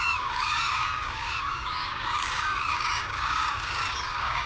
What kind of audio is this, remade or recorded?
remade